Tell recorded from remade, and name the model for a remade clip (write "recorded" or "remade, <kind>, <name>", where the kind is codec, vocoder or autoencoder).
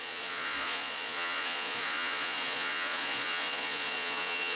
remade, vocoder, Vocos